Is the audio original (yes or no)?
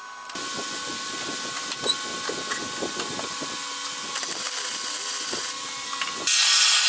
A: yes